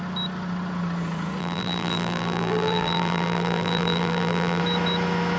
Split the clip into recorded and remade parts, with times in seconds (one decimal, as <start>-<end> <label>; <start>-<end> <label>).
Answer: 0.0-1.4 recorded; 1.4-4.6 remade; 4.6-5.4 recorded

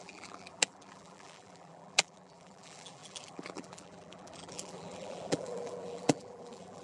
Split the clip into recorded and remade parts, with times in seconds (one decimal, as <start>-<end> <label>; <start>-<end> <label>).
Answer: 0.0-6.8 remade